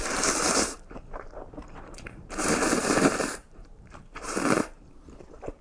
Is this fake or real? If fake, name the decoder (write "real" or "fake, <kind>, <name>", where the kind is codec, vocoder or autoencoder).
fake, vocoder, BigVGAN v2